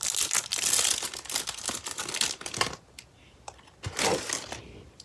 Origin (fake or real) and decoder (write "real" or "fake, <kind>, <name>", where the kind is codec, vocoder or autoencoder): real